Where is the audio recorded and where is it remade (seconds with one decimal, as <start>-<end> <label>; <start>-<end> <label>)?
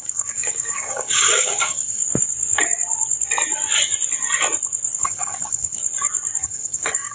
0.0-2.0 remade; 2.0-5.0 recorded; 5.0-5.8 remade; 5.8-6.4 recorded; 6.4-7.1 remade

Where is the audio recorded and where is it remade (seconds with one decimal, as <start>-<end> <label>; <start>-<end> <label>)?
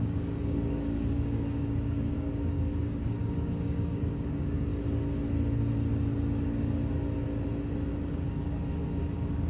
0.0-4.7 remade; 4.7-7.9 recorded; 7.9-9.5 remade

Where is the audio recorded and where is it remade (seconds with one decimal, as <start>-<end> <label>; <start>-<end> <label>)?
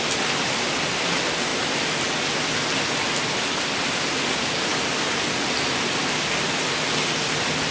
0.0-7.7 recorded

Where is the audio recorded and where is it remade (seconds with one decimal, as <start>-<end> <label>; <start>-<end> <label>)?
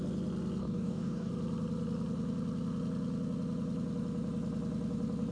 0.0-0.6 recorded; 0.6-1.3 remade; 1.3-5.3 recorded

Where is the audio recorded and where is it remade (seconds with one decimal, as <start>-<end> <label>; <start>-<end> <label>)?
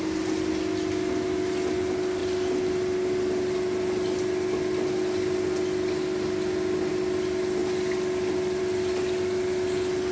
0.0-10.1 recorded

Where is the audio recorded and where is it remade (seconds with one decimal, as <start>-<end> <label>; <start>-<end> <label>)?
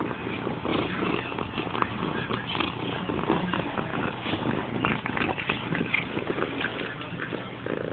0.0-3.9 recorded; 3.9-4.8 remade; 4.8-7.9 recorded